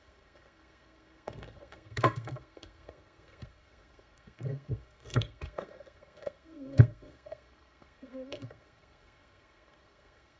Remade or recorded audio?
remade